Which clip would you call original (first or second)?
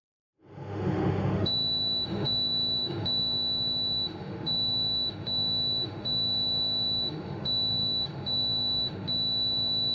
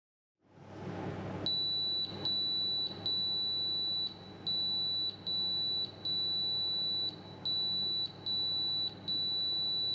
second